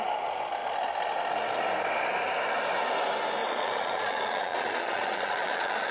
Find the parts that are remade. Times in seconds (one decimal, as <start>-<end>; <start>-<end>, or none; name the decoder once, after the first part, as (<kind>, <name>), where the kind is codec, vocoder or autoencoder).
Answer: 3.4-5.9 (vocoder, Vocos)